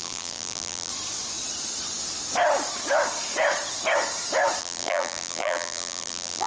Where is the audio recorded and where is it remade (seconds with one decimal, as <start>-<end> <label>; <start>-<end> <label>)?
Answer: 0.0-0.9 remade; 0.9-4.6 recorded; 4.6-6.5 remade